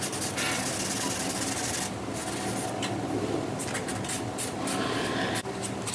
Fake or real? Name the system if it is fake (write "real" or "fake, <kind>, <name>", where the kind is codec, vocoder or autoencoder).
real